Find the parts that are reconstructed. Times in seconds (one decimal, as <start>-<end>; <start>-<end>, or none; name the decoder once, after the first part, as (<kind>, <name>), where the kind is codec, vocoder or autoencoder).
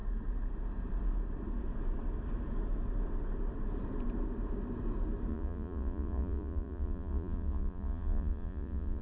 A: 5.3-9.0 (vocoder, Vocos)